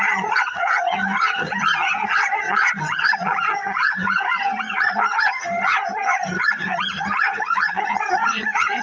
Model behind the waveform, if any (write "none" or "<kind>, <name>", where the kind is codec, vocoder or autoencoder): vocoder, HiFi-GAN